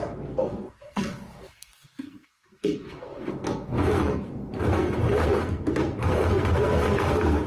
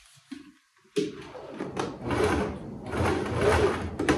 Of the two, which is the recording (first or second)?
second